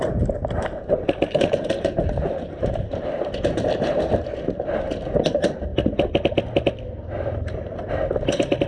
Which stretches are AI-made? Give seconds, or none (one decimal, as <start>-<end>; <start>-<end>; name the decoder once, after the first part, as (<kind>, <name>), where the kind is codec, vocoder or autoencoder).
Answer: 0.0-5.7 (vocoder, BigVGAN v2); 7.9-8.7

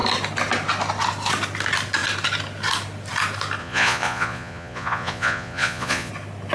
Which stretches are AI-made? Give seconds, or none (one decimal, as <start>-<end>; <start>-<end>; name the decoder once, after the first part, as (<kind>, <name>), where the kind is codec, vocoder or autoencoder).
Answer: 3.6-6.1 (vocoder, Vocos)

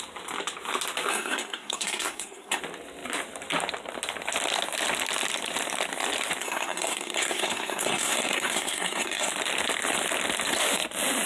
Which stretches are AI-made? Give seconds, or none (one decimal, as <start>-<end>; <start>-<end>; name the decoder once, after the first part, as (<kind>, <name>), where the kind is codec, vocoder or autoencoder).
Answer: 1.1-2.6 (codec, SNAC); 6.4-9.3

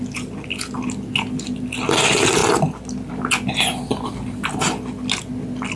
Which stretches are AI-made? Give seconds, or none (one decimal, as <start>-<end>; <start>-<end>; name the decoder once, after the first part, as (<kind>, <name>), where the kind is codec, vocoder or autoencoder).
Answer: none

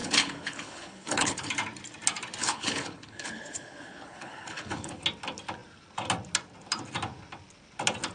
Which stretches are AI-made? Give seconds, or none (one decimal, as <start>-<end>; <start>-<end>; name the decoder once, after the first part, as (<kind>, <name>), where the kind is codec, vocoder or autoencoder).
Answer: 0.0-1.5 (codec, HILCodec); 2.4-5.0

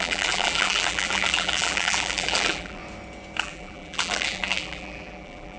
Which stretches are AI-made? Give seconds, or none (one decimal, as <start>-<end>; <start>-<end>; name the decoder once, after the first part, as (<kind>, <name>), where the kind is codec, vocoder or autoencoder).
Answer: 0.0-2.8 (vocoder, BigVGAN v2); 3.4-5.6

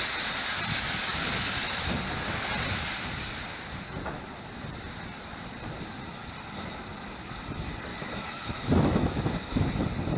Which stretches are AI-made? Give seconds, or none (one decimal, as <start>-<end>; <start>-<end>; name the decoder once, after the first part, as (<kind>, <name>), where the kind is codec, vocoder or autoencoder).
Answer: 7.9-9.2 (autoencoder, DAC-VAE)